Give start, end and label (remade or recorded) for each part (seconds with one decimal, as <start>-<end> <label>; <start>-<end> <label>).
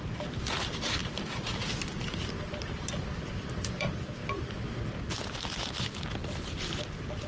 0.0-4.2 remade; 4.2-6.8 recorded; 6.8-7.3 remade